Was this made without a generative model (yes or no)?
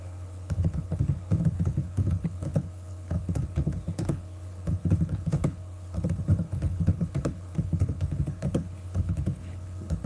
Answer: no